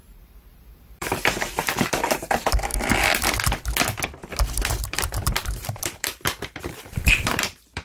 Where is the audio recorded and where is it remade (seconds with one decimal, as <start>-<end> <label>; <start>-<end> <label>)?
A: 0.0-2.7 remade; 2.7-4.7 recorded; 4.7-7.8 remade